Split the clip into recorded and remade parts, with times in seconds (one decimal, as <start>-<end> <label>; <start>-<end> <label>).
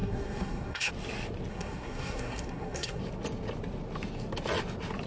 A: 0.0-0.9 remade; 0.9-1.5 recorded; 1.5-3.0 remade; 3.0-5.1 recorded